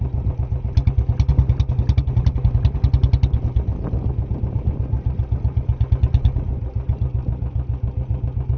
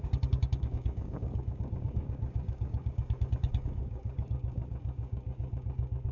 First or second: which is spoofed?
second